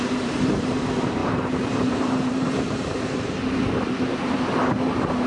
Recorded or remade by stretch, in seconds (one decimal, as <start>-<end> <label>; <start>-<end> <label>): 0.0-5.3 remade